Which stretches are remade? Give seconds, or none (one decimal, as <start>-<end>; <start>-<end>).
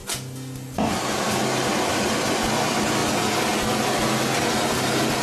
none